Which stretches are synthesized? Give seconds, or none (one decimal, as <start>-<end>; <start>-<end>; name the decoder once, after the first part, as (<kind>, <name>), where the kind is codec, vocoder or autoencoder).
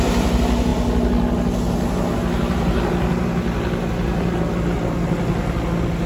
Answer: none